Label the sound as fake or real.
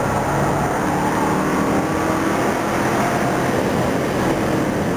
real